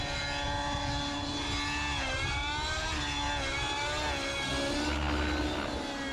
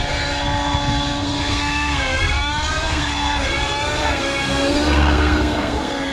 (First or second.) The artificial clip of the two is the second